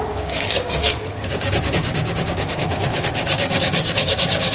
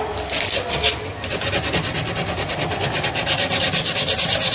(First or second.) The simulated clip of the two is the first